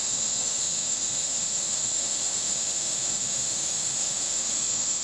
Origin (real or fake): fake